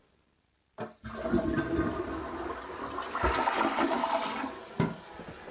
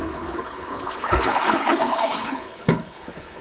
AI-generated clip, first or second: second